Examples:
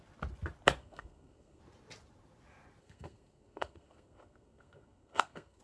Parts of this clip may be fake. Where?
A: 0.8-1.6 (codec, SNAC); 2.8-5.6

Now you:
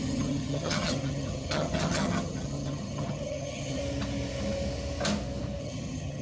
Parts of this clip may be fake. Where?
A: 0.0-3.8 (vocoder, HiFi-GAN); 5.6-6.2

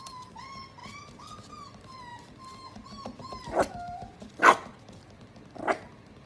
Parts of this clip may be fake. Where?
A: none